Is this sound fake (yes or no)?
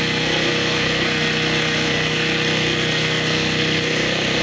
yes